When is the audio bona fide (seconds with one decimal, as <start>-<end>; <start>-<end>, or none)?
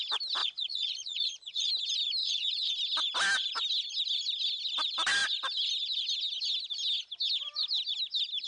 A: 0.0-0.4; 1.7-2.2; 2.7-8.5